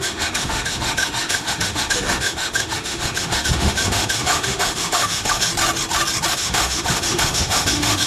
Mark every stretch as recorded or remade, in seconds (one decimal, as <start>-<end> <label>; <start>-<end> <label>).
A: 0.0-5.5 remade; 5.5-6.3 recorded; 6.3-8.1 remade